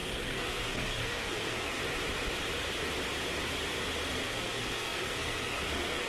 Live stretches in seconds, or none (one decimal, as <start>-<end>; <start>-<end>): 1.8-4.1